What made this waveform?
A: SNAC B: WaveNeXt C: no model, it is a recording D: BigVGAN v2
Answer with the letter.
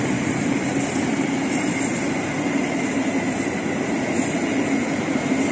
C